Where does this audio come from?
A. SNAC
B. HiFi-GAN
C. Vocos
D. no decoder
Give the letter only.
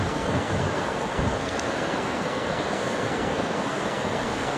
A